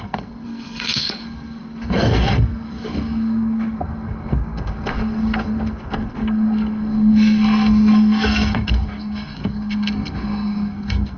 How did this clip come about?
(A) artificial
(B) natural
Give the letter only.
A